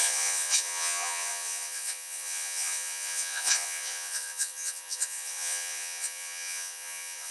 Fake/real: fake